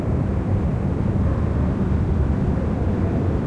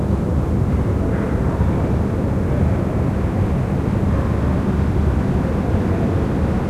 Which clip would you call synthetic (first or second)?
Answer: first